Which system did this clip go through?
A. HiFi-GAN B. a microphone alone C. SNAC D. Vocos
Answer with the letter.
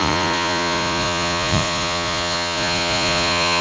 D